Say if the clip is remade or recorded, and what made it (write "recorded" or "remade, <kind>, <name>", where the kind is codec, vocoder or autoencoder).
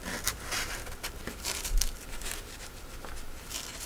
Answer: recorded